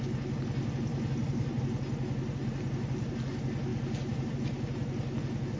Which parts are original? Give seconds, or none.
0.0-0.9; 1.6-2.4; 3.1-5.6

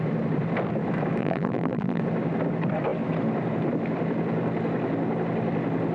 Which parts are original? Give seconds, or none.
0.0-1.2; 2.0-5.9